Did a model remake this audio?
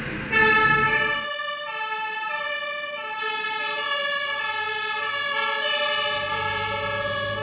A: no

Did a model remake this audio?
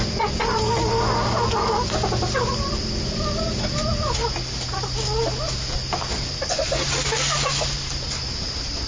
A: no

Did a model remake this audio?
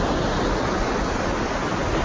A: no